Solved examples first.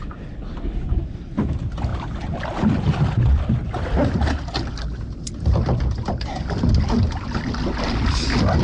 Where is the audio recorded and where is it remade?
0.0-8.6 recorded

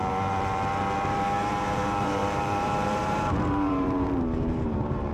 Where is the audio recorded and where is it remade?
0.0-5.1 remade

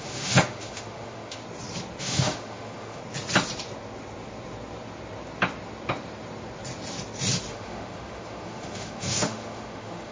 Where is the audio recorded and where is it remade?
0.0-1.4 remade; 1.4-2.0 recorded; 2.0-3.0 remade; 3.0-7.5 recorded; 7.5-10.1 remade

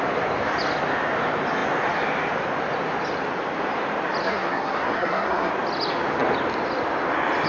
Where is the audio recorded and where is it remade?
0.0-4.2 recorded; 4.2-5.5 remade; 5.5-7.5 recorded

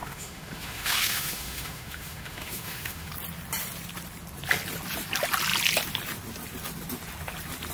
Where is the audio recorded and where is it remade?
0.0-3.1 remade; 3.1-7.7 recorded

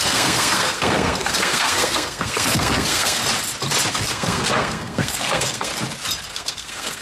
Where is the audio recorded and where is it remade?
0.0-3.2 remade; 3.2-3.9 recorded; 3.9-5.7 remade; 5.7-6.3 recorded; 6.3-7.0 remade